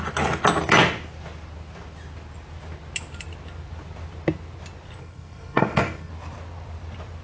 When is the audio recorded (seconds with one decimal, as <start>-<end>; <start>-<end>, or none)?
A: 0.0-5.0; 6.1-7.2